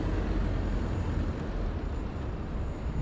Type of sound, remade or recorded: recorded